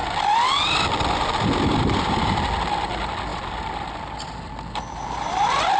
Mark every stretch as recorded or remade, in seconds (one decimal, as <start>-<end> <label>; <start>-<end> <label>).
0.0-5.8 recorded